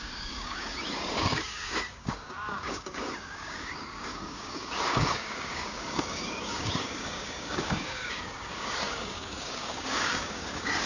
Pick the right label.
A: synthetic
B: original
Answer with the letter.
A